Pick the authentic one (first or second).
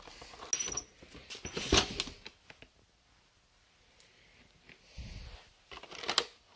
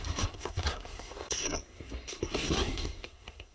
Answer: first